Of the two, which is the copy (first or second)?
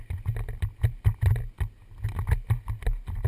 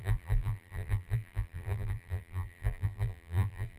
second